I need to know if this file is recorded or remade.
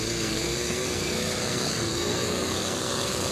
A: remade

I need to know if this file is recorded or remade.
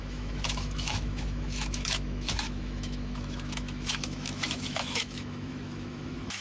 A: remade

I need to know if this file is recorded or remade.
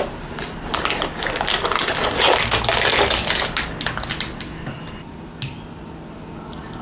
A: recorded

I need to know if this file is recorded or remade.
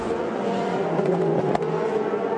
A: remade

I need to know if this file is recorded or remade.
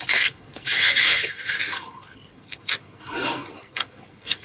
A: remade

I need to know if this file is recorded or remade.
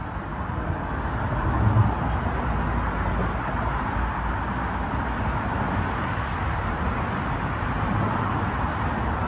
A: recorded